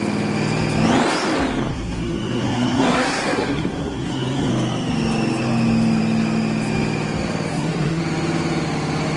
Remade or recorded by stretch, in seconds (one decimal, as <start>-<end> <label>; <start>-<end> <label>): 0.0-1.7 recorded; 1.7-4.5 remade; 4.5-7.5 recorded; 7.5-8.0 remade; 8.0-9.2 recorded